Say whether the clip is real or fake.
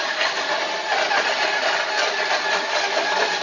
real